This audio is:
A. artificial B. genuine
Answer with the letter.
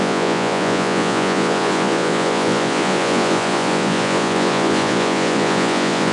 A